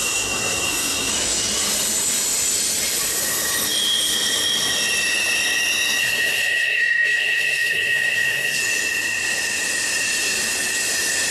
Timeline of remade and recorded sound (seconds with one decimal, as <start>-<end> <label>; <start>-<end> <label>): 0.0-1.1 remade; 1.1-6.0 recorded; 6.0-8.6 remade; 8.6-11.3 recorded